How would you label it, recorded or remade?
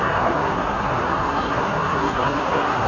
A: remade